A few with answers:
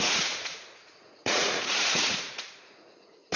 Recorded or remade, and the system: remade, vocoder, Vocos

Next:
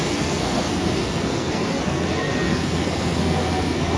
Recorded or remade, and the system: remade, codec, SNAC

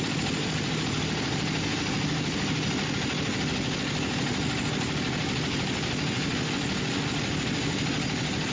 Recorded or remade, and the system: recorded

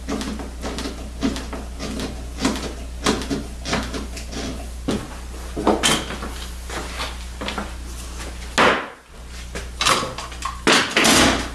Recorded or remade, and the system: recorded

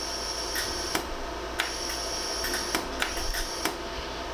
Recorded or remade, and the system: recorded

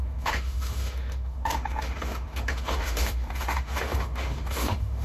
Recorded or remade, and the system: remade, autoencoder, DAC-VAE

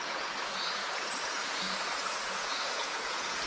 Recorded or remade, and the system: remade, vocoder, Vocos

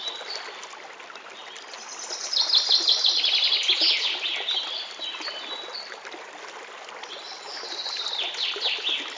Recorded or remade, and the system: recorded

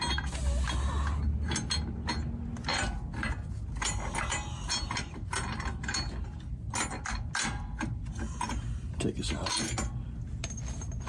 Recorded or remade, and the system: recorded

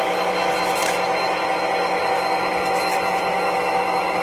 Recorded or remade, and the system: recorded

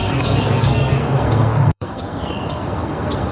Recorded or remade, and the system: remade, codec, SNAC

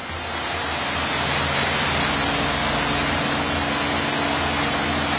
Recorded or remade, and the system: recorded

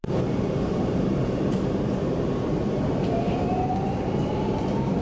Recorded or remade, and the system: remade, vocoder, BigVGAN v2